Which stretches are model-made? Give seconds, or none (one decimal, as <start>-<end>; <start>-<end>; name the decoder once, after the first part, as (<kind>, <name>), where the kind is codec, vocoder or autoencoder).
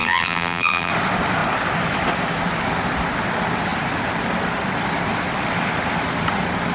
0.0-0.9 (vocoder, BigVGAN v2)